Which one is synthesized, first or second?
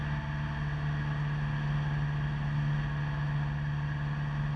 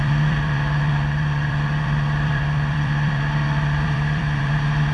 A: second